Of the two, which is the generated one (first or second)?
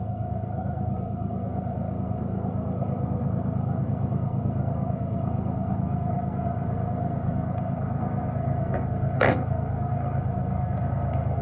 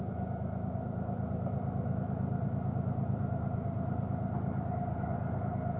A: first